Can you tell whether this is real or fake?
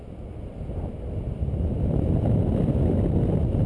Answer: real